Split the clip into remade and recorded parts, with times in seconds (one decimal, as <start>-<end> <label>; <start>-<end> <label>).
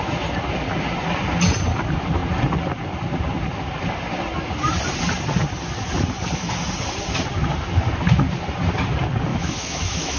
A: 0.0-9.3 recorded; 9.3-10.2 remade